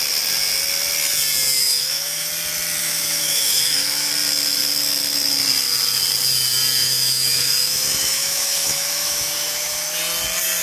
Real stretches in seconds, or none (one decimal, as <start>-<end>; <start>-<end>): 0.0-1.6; 2.3-2.8; 4.1-6.8; 10.0-10.6